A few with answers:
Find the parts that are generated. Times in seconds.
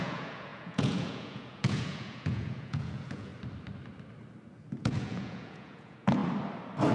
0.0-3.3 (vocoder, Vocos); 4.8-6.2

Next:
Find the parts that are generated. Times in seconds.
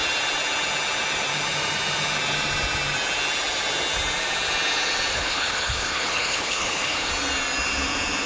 5.1-7.1 (codec, HILCodec)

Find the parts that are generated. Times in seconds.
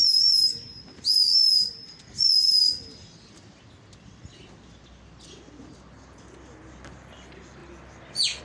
none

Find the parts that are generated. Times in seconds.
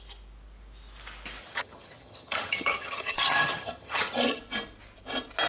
1.4-4.4 (vocoder, HiFi-GAN)